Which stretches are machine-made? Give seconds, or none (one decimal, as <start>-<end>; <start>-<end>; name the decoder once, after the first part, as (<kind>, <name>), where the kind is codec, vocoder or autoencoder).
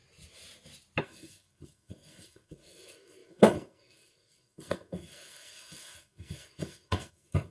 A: 1.0-7.5 (codec, SNAC)